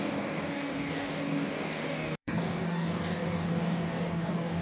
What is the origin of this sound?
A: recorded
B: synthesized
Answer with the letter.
B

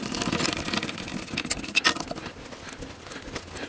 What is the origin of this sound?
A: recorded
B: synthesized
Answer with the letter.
A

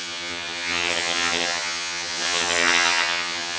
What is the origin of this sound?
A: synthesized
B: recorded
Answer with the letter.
A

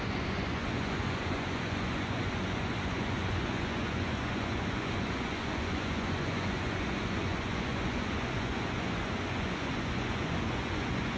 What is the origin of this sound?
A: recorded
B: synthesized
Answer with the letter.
B